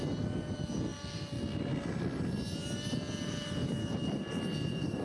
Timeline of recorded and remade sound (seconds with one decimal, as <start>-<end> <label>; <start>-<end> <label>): 0.0-5.0 recorded